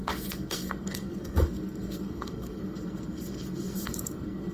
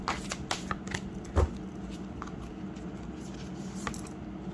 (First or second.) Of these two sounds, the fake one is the first